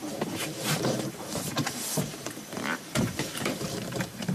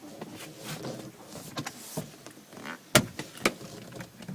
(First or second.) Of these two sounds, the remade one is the first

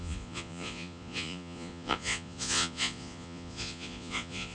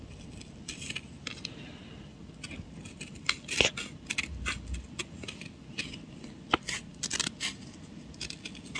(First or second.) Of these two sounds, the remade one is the first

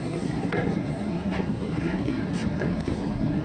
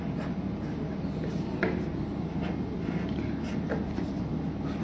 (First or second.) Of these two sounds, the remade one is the first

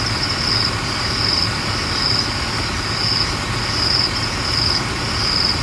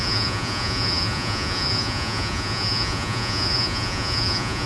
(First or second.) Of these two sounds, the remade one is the second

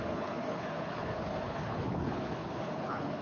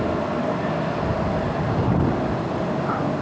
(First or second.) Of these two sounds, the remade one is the first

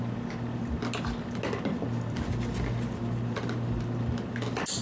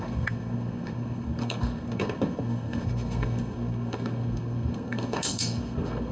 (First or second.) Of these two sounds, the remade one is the second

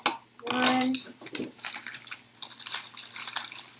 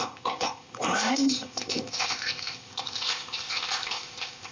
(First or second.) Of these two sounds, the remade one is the second